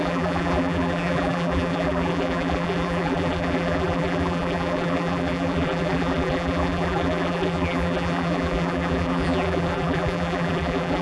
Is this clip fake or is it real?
fake